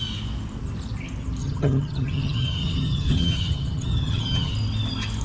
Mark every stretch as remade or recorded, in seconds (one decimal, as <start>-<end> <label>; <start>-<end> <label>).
0.0-1.4 recorded; 1.4-4.5 remade; 4.5-5.2 recorded